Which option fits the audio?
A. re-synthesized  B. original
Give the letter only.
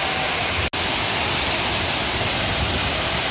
B